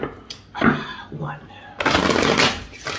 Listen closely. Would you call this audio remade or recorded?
recorded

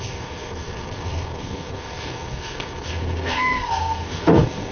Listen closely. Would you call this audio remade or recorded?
remade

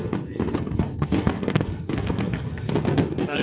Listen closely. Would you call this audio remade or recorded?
remade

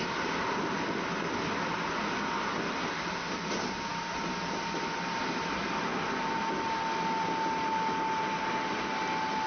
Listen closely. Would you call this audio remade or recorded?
recorded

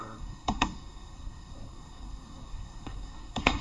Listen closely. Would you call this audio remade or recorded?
remade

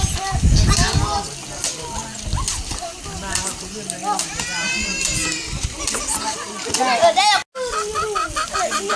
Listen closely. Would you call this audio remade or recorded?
recorded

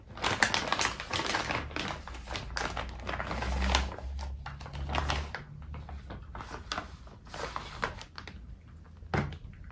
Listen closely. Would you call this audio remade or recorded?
recorded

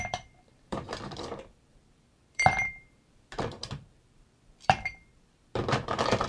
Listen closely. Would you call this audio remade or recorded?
remade